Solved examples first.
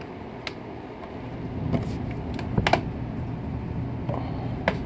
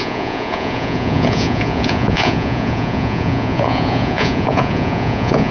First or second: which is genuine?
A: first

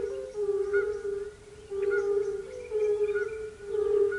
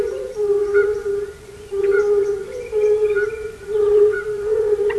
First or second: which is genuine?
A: first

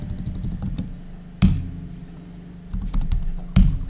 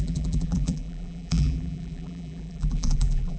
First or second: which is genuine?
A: first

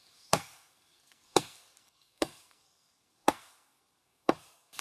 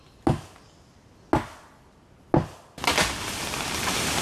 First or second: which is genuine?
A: second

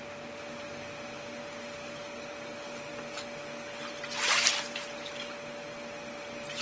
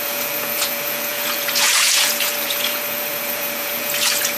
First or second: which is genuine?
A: first